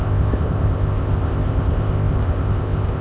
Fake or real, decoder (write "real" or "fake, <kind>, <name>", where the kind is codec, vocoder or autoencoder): fake, codec, ZipCodec